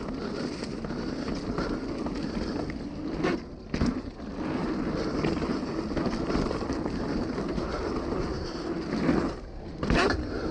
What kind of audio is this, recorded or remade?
recorded